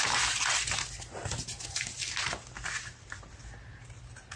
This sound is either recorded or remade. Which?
recorded